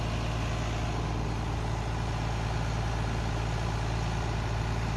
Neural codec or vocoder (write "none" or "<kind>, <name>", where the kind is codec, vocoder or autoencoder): none